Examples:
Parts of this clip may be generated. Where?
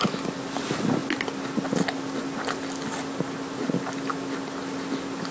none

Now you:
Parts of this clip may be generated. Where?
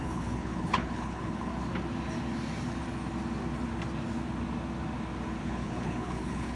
0.0-1.5 (codec, HILCodec); 5.4-6.5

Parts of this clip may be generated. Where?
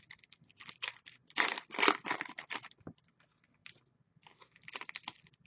none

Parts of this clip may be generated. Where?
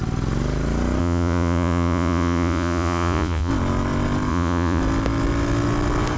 1.0-3.5 (vocoder, Vocos); 4.3-4.8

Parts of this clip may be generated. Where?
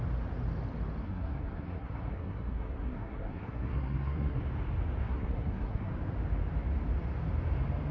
1.0-4.4 (codec, SNAC); 5.0-5.9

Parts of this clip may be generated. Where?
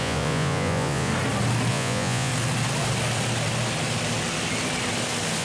0.0-1.1 (vocoder, Vocos); 1.7-2.3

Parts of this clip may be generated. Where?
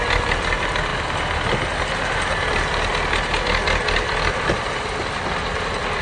none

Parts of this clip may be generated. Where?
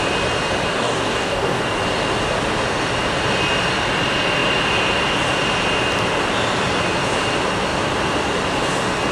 0.7-1.6 (codec, DAC)